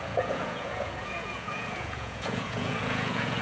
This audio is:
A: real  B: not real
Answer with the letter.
B